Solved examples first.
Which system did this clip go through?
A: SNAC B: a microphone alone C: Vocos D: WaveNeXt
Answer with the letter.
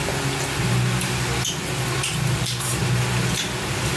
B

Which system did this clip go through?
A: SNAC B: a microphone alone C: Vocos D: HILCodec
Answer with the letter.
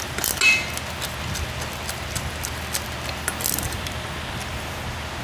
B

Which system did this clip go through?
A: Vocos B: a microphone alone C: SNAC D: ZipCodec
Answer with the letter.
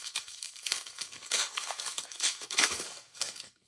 C